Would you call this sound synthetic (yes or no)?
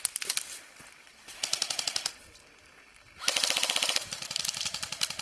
no